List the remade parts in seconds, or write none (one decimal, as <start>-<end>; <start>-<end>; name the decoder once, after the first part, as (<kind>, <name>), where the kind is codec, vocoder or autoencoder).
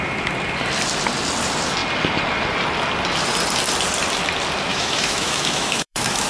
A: 4.7-6.3 (autoencoder, DAC-VAE)